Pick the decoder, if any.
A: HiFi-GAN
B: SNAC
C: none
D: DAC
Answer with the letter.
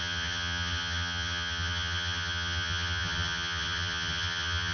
A